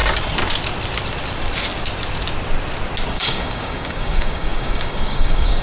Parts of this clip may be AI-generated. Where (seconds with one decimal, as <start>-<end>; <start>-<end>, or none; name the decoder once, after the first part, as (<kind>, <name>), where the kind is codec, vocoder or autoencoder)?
3.1-5.6 (codec, DAC)